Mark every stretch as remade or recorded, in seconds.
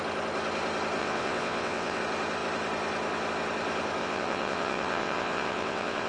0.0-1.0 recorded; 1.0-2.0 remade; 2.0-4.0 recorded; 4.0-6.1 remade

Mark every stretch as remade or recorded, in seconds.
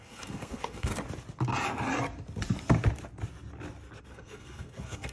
0.0-0.9 remade; 0.9-4.0 recorded; 4.0-5.1 remade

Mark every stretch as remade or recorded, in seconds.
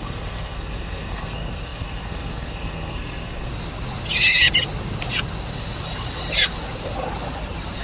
0.0-3.5 remade; 3.5-7.8 recorded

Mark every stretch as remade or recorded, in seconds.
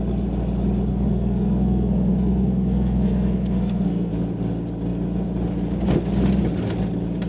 0.0-0.9 recorded; 0.9-4.1 remade; 4.1-7.3 recorded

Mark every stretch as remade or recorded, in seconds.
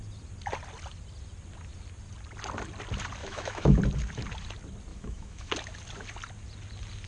0.0-3.2 recorded; 3.2-3.8 remade; 3.8-4.9 recorded; 4.9-5.5 remade; 5.5-7.1 recorded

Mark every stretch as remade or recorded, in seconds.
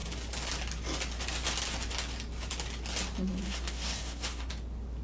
0.0-3.4 recorded; 3.4-4.5 remade; 4.5-5.0 recorded